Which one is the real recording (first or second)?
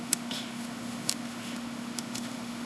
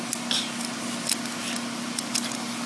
second